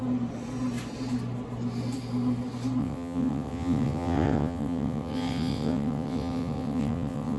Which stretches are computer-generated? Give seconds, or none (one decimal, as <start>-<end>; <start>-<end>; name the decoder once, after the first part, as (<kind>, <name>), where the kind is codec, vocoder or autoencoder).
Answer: 2.8-7.4 (vocoder, WaveNeXt)

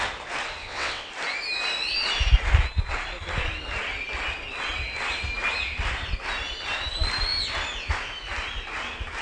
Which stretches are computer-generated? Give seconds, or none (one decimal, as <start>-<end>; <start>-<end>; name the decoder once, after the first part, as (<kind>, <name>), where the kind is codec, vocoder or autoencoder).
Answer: 0.6-1.1 (vocoder, WaveNeXt)

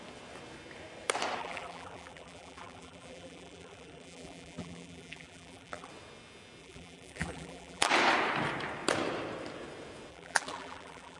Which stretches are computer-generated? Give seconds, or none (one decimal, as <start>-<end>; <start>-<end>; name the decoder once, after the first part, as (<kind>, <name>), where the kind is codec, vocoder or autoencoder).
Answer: 1.4-5.9 (vocoder, BigVGAN v2); 6.6-7.9; 10.1-11.2

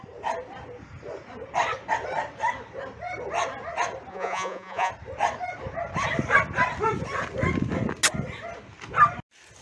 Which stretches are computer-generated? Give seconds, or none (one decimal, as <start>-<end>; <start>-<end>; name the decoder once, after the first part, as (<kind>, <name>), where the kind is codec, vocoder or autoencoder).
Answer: 4.1-4.9 (vocoder, Vocos)